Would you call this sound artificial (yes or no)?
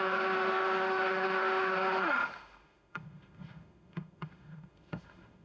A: yes